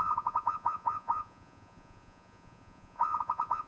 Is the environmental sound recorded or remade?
remade